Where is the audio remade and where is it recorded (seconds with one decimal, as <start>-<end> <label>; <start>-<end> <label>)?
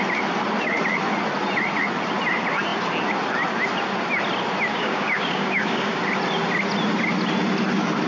0.0-4.7 recorded; 4.7-6.0 remade; 6.0-8.1 recorded